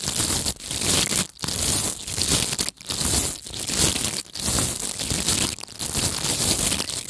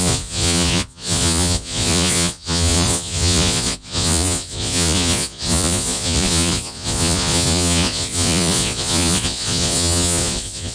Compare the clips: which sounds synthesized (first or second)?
second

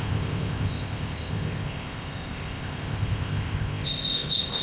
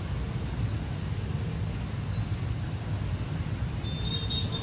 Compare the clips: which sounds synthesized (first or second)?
first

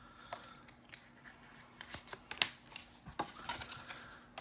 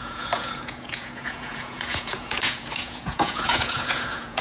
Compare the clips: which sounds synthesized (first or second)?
second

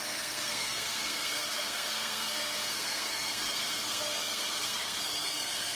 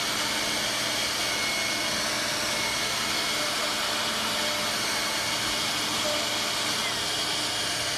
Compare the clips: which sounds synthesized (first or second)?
first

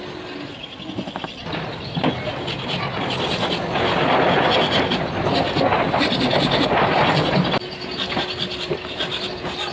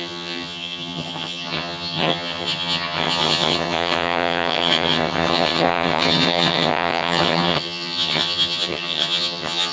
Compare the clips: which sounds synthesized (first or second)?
second